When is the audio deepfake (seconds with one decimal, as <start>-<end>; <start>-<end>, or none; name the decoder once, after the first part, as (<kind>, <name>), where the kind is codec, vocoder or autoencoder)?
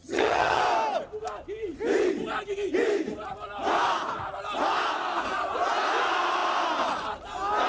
0.0-0.6 (vocoder, HiFi-GAN)